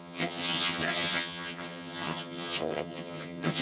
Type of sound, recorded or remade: remade